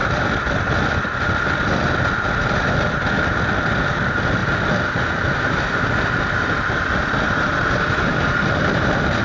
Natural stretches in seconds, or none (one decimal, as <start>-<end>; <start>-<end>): 0.0-9.2